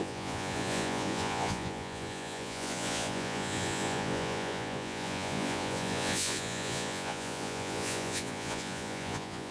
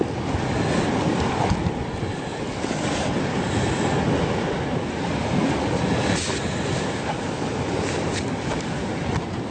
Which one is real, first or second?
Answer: second